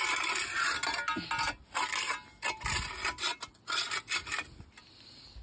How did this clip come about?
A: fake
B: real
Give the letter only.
B